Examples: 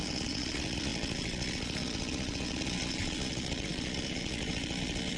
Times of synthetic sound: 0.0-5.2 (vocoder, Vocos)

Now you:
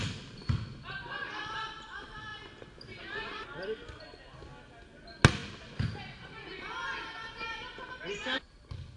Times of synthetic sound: none

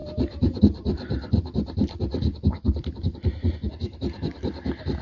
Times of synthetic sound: 0.0-0.6 (vocoder, BigVGAN v2)